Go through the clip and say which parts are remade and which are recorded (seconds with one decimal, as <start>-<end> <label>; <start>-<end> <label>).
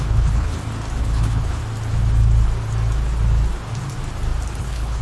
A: 0.0-0.5 remade; 0.5-1.0 recorded; 1.0-1.6 remade; 1.6-4.6 recorded; 4.6-5.0 remade